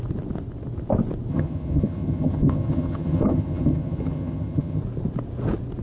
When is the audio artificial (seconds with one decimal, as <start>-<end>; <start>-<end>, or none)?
1.3-4.8